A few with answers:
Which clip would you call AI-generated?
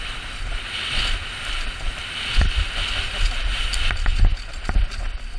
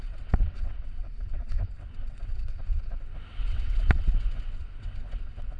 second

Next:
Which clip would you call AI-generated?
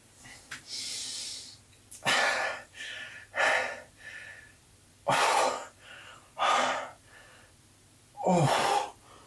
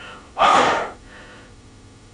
second